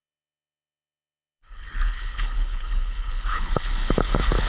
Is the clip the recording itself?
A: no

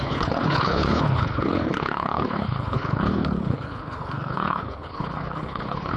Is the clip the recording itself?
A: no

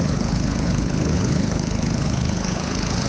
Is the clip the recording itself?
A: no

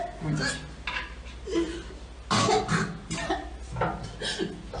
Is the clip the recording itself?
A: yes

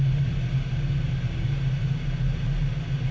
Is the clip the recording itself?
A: yes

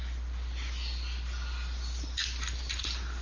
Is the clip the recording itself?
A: yes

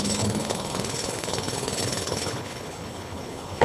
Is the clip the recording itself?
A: no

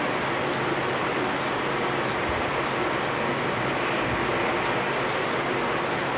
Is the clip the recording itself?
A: yes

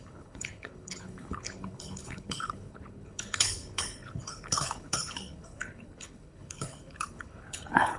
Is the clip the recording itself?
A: no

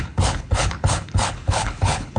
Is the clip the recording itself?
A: no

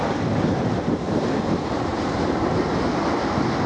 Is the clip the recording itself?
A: yes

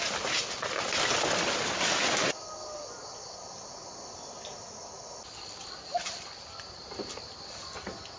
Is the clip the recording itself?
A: yes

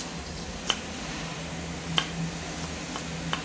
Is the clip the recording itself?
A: yes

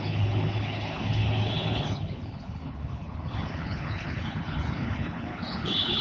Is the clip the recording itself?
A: no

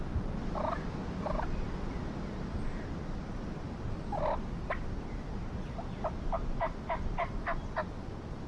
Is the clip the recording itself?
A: yes